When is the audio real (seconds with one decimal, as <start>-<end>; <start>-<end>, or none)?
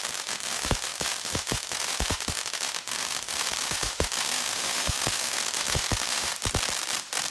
6.3-7.3